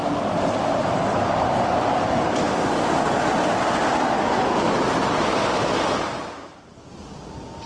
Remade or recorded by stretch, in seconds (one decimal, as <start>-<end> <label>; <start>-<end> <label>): 0.0-7.7 recorded